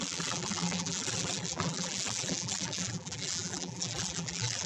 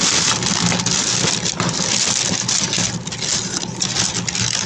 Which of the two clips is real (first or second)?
second